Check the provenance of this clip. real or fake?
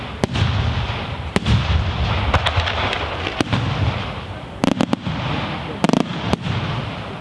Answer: real